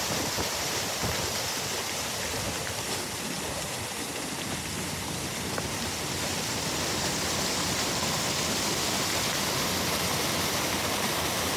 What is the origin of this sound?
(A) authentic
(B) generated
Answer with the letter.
A